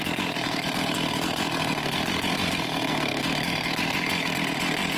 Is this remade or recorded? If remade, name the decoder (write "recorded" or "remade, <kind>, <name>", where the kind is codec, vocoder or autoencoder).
remade, codec, SNAC